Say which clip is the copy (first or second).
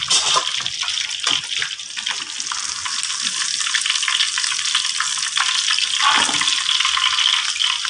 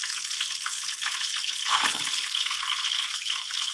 second